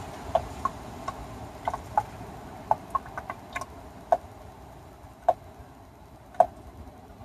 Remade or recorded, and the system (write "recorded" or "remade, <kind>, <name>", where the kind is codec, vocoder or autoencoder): recorded